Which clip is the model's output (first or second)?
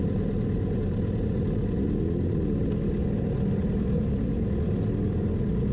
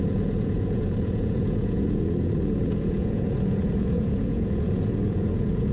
second